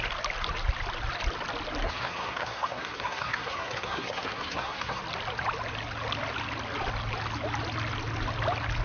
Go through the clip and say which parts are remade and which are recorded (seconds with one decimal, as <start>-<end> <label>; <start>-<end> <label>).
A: 0.0-1.8 recorded; 1.8-5.0 remade; 5.0-8.8 recorded

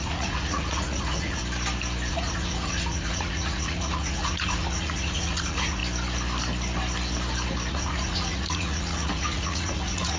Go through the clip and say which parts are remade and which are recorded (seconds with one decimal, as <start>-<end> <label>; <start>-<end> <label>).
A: 0.0-1.4 remade; 1.4-2.1 recorded; 2.1-5.8 remade; 5.8-7.7 recorded; 7.7-10.2 remade

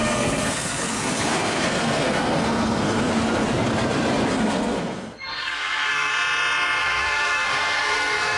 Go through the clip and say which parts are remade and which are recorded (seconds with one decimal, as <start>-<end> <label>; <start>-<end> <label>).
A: 0.0-3.1 remade; 3.1-4.3 recorded; 4.3-6.1 remade; 6.1-6.8 recorded; 6.8-8.4 remade

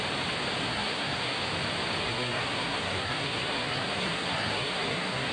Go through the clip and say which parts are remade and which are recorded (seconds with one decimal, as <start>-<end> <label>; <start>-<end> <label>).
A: 0.0-0.6 recorded; 0.6-1.4 remade; 1.4-2.0 recorded; 2.0-5.3 remade

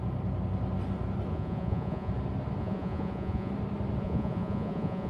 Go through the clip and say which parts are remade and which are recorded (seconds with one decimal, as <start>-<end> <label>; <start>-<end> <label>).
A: 0.0-1.3 recorded; 1.3-2.1 remade; 2.1-2.6 recorded; 2.6-3.5 remade; 3.5-4.0 recorded; 4.0-5.1 remade

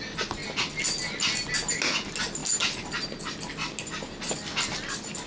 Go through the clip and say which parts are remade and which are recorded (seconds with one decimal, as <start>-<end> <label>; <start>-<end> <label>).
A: 0.0-5.3 recorded

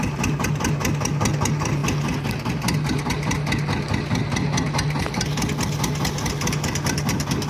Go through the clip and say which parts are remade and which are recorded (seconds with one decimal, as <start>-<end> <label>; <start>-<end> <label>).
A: 0.0-7.5 recorded

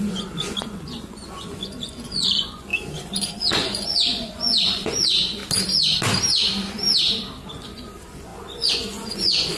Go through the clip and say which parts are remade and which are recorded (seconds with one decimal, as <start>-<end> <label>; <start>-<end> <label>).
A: 0.0-5.4 remade; 5.4-7.5 recorded; 7.5-9.6 remade